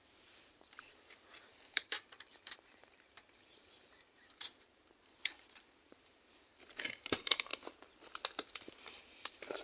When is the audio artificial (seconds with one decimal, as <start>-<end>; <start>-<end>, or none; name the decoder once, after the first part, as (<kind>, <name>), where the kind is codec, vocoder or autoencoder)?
0.0-7.5 (vocoder, BigVGAN v2); 9.2-9.6